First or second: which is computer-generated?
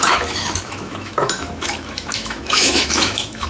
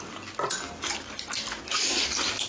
first